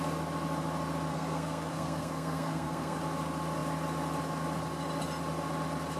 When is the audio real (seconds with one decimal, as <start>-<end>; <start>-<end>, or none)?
0.0-1.1; 3.0-6.0